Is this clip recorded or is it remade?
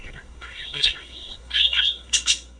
remade